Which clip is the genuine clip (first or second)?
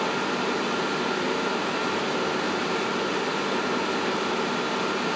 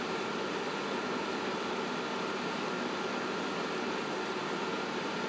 first